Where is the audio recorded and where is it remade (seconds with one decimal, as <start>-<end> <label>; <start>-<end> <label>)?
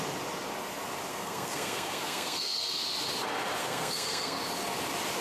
0.0-1.1 recorded; 1.1-2.8 remade; 2.8-3.6 recorded; 3.6-4.4 remade; 4.4-5.2 recorded